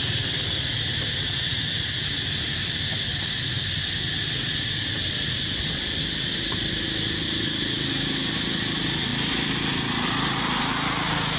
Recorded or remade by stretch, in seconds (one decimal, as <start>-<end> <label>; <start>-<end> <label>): 0.0-11.4 recorded